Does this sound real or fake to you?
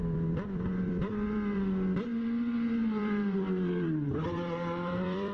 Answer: fake